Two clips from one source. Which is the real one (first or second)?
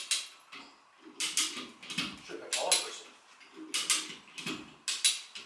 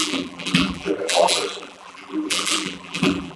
first